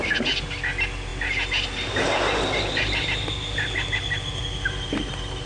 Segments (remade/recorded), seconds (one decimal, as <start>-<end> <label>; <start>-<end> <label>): 0.0-5.5 recorded